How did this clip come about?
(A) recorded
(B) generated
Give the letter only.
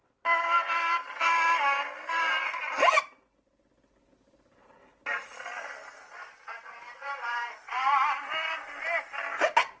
A